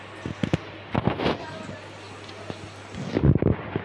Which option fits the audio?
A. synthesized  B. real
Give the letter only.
B